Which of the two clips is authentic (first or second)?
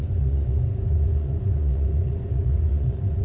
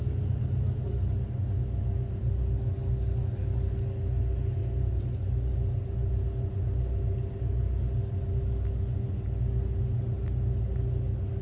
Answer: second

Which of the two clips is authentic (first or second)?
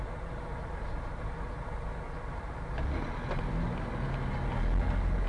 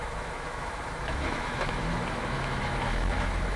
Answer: first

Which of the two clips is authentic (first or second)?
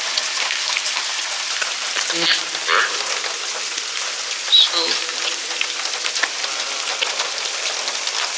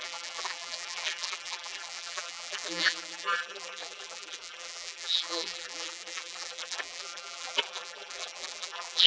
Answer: first